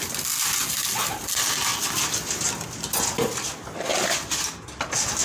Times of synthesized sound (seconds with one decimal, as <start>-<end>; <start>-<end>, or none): none